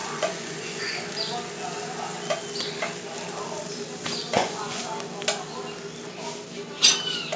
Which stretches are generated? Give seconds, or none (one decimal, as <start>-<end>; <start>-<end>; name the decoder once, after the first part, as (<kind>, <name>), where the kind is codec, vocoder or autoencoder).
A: 0.0-1.0 (vocoder, Vocos); 4.3-4.8